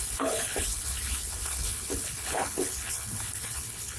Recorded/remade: remade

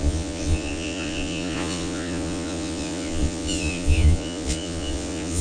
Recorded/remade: remade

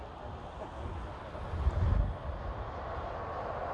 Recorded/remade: recorded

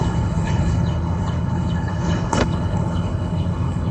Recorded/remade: remade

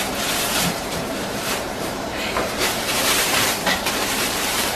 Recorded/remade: remade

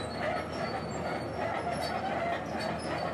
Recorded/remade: recorded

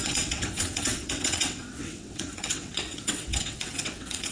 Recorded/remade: remade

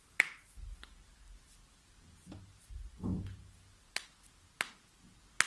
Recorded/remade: recorded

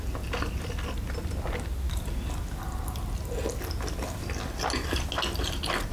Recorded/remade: recorded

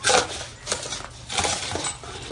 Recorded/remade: recorded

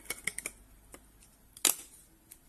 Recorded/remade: recorded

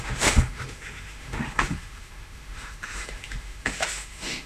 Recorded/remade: remade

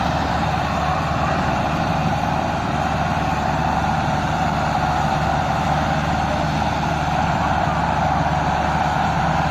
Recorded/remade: remade